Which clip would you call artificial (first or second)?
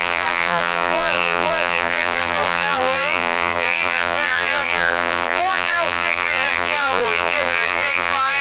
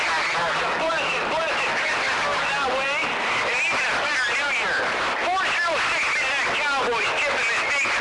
first